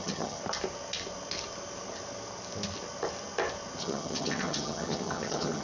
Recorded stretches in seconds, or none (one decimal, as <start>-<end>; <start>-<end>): 0.4-3.8